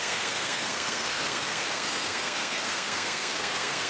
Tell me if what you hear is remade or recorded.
remade